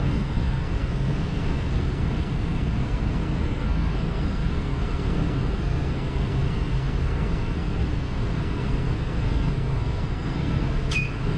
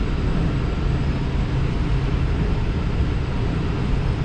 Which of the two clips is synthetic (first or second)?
first